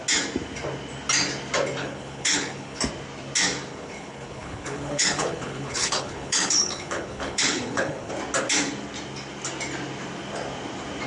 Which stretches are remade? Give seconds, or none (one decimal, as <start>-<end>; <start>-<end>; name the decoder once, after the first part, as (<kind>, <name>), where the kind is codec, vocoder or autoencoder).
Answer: 1.8-2.8 (codec, HILCodec); 3.7-8.1